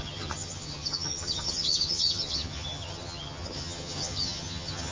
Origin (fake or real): fake